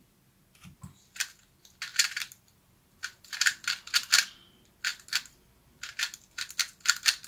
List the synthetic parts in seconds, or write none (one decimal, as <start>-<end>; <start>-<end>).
1.9-3.6